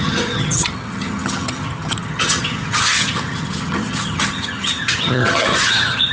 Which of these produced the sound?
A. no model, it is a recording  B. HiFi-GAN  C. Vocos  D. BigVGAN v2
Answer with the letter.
B